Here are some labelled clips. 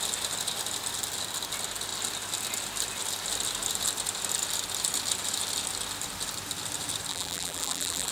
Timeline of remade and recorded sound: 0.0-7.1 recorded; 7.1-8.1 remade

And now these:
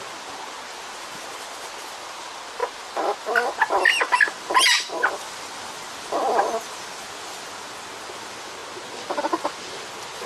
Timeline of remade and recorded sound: 0.0-10.3 recorded

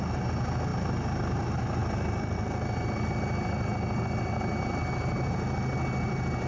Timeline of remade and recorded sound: 0.0-6.5 recorded

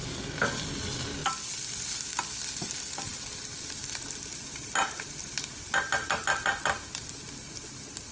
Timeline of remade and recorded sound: 0.0-0.6 remade; 0.6-8.1 recorded

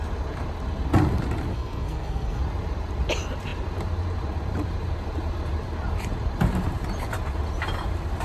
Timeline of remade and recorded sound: 0.0-1.5 recorded; 1.5-2.4 remade; 2.4-8.2 recorded

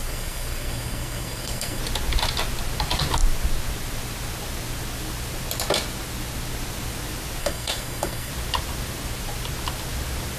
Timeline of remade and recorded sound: 0.0-1.8 remade; 1.8-7.4 recorded; 7.4-8.3 remade; 8.3-10.4 recorded